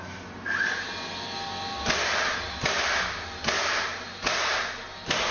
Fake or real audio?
real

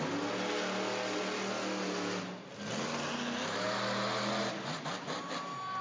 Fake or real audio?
real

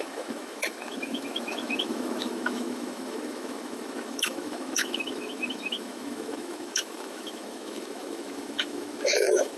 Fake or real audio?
fake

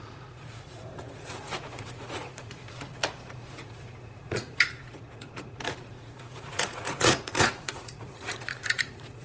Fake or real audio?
fake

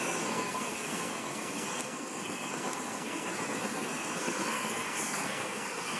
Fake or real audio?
fake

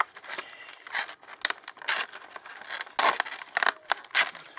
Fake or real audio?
real